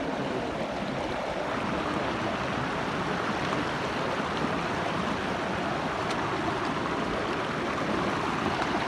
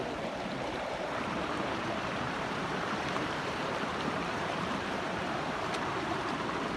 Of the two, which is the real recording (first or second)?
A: first